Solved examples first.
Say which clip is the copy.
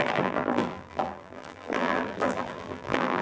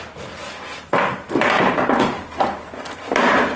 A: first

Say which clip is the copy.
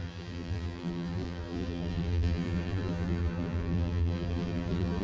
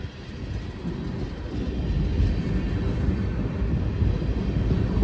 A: first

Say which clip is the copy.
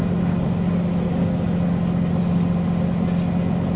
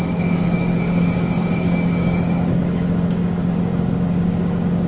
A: second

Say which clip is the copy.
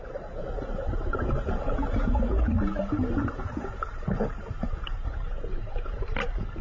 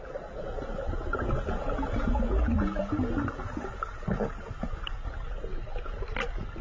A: first